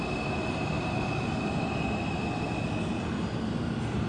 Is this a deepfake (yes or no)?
no